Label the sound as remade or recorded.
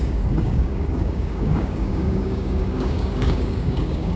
remade